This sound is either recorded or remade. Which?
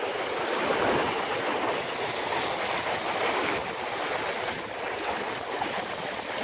recorded